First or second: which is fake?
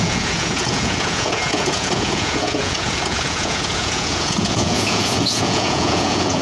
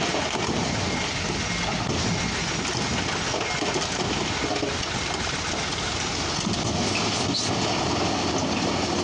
first